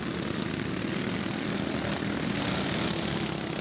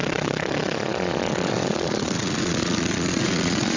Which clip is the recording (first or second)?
first